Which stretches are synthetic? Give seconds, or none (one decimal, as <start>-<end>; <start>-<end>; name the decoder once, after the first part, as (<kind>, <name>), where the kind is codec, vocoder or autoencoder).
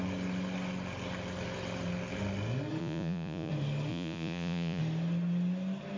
2.8-3.5 (vocoder, Vocos); 3.9-4.8